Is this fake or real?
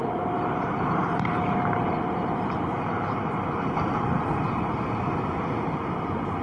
fake